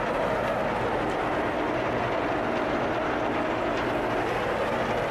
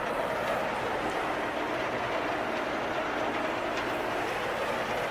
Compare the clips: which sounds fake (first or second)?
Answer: second